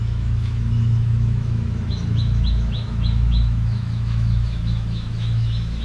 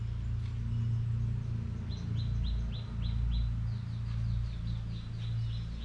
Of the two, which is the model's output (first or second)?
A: first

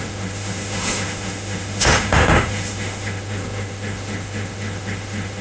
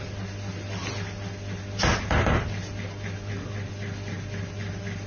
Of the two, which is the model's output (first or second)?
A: first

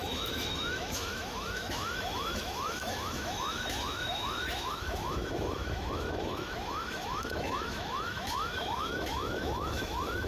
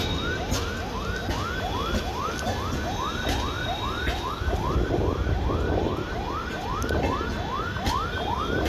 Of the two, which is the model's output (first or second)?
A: first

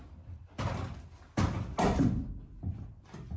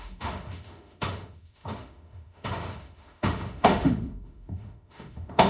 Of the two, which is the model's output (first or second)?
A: second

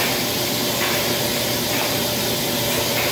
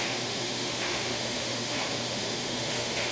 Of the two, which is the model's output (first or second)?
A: second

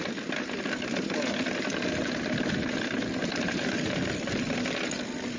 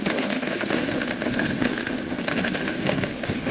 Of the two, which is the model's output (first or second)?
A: second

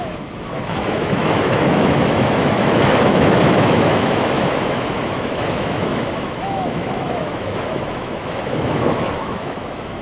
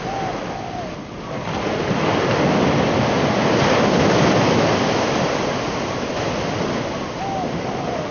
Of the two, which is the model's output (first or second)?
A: first